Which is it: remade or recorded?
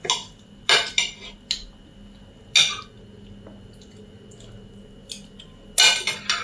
recorded